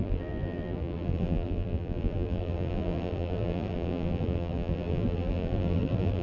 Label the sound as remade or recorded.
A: remade